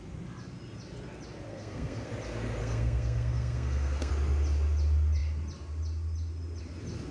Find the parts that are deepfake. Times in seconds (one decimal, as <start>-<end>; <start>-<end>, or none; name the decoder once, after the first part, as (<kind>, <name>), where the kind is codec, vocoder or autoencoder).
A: 1.5-2.1 (codec, SNAC); 2.6-4.1